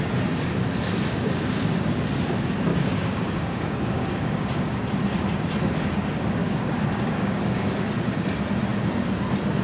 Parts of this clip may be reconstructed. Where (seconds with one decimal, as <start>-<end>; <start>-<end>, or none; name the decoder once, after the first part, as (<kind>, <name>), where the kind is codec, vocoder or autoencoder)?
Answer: 2.7-4.8 (codec, DAC); 6.4-7.9